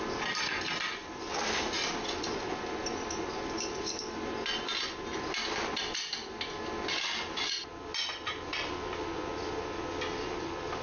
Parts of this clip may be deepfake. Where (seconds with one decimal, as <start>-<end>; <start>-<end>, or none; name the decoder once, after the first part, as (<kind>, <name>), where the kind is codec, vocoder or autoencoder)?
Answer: 1.0-2.6 (vocoder, BigVGAN v2)